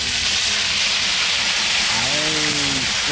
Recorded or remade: recorded